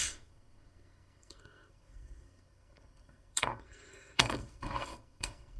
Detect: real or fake fake